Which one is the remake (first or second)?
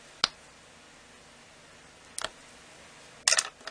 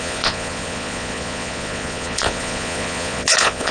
second